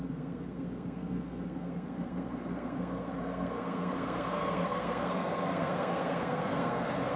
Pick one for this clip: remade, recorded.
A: remade